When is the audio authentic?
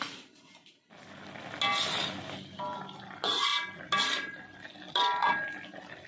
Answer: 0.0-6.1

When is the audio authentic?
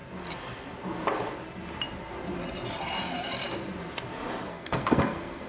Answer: 0.0-4.5